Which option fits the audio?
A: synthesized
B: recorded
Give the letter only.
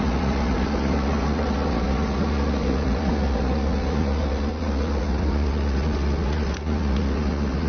A